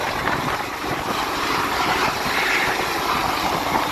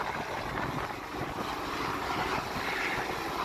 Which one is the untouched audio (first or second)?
second